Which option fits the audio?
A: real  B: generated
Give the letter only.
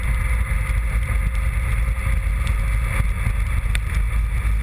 A